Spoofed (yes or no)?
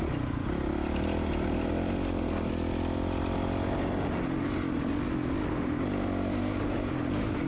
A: no